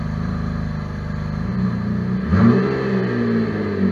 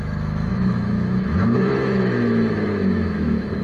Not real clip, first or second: second